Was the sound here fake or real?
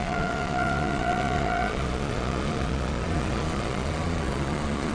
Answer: fake